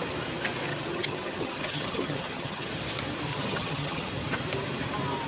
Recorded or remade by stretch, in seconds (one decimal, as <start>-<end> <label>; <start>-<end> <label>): 0.0-0.7 recorded; 0.7-2.7 remade; 2.7-3.3 recorded; 3.3-4.1 remade; 4.1-5.3 recorded